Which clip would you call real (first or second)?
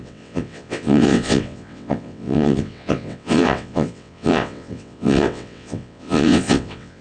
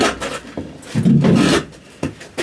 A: second